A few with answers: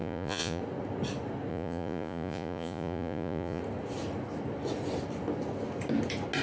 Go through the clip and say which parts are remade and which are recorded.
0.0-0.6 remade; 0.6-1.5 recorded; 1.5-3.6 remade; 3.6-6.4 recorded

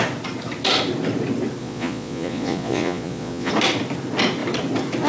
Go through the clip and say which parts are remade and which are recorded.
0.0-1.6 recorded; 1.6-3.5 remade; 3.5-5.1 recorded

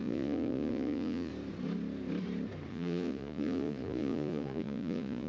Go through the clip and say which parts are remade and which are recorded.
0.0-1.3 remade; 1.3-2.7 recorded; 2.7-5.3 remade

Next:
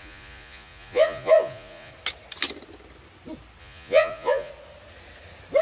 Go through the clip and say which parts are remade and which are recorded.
0.0-1.9 remade; 1.9-3.6 recorded; 3.6-4.5 remade; 4.5-5.6 recorded

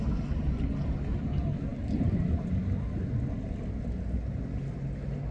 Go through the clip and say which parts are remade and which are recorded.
0.0-5.3 recorded

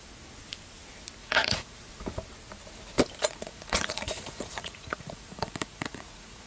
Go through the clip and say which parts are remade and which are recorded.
0.0-1.2 recorded; 1.2-1.8 remade; 1.8-3.2 recorded; 3.2-6.5 remade